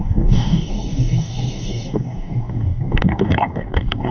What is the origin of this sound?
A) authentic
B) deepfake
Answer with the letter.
B